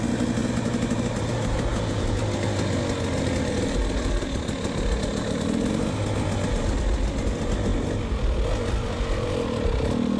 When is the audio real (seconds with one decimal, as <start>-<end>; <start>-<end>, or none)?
0.0-1.7; 2.2-10.2